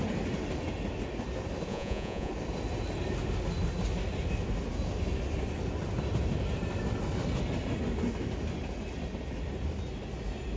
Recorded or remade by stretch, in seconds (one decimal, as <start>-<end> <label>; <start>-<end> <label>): 0.0-1.7 recorded; 1.7-2.3 remade; 2.3-10.6 recorded

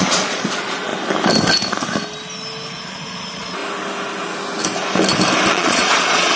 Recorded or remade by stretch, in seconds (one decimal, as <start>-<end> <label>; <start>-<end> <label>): 0.0-0.9 remade; 0.9-2.9 recorded; 2.9-3.6 remade; 3.6-5.5 recorded; 5.5-6.4 remade

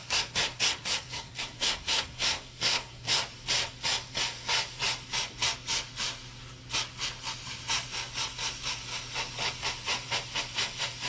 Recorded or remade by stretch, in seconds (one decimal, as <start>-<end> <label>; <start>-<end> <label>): 0.0-3.2 remade; 3.2-11.1 recorded

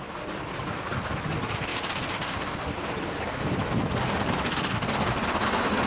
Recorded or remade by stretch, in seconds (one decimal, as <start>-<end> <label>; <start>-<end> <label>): 0.0-5.9 recorded

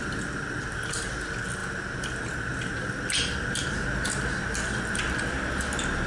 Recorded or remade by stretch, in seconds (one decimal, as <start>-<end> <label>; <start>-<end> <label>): 0.0-6.1 recorded

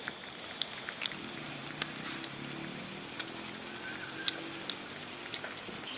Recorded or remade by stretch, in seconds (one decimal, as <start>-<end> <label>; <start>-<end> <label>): 0.0-6.0 recorded